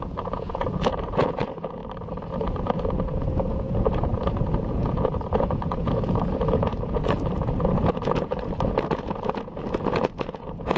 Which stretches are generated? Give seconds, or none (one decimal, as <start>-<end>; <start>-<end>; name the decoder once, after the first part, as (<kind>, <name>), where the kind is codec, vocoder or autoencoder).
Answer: 0.0-1.8 (vocoder, Vocos); 2.4-10.8